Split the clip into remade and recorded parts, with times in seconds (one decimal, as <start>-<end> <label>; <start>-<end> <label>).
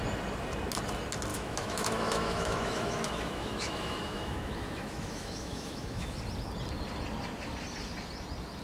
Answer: 0.0-1.3 recorded; 1.3-6.2 remade; 6.2-8.6 recorded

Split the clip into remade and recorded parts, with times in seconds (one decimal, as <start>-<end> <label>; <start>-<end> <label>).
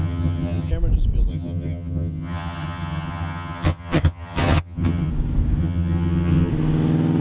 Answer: 0.0-0.7 remade; 0.7-1.3 recorded; 1.3-5.1 remade; 5.1-5.6 recorded; 5.6-6.5 remade; 6.5-7.2 recorded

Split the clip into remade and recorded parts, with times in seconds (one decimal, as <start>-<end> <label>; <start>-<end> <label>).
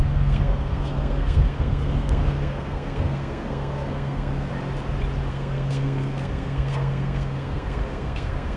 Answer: 0.0-4.5 remade; 4.5-5.3 recorded; 5.3-8.6 remade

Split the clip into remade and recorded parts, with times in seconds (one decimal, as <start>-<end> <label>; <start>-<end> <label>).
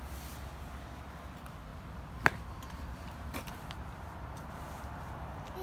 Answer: 0.0-1.7 recorded; 1.7-4.5 remade; 4.5-5.6 recorded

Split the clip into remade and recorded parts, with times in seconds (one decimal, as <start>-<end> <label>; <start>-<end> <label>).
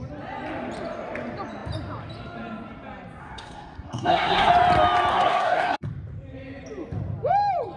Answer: 0.0-3.2 recorded; 3.2-4.5 remade; 4.5-5.1 recorded; 5.1-5.9 remade; 5.9-7.8 recorded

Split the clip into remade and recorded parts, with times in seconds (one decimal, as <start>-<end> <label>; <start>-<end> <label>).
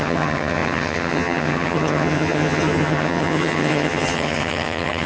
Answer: 0.0-5.1 remade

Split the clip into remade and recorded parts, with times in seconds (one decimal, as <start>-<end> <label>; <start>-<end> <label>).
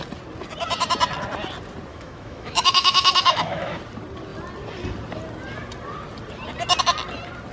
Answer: 0.0-1.9 recorded; 1.9-3.8 remade; 3.8-7.5 recorded